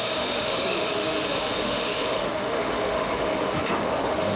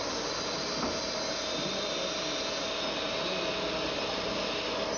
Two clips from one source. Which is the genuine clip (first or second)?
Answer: second